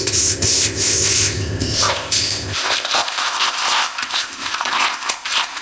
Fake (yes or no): yes